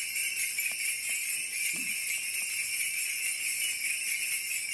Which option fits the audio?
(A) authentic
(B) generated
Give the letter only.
A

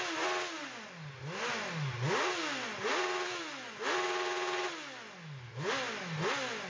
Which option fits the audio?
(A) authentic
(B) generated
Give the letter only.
A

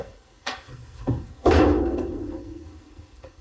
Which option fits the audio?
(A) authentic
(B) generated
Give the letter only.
B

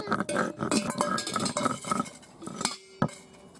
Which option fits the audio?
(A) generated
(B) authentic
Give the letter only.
B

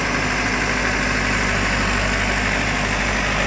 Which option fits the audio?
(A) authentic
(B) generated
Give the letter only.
A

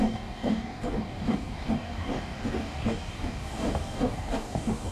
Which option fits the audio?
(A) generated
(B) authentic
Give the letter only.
A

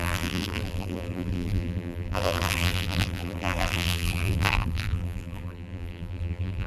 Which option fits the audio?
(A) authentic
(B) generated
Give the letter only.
B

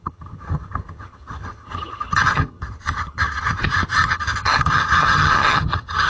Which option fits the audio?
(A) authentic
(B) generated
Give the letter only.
B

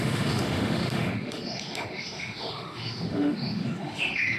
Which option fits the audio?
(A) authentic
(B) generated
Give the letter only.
B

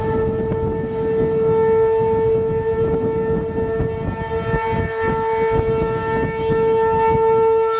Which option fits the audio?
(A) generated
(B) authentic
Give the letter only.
B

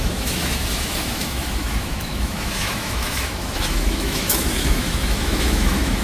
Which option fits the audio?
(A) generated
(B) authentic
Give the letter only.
A